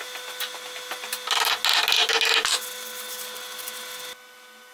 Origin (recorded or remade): recorded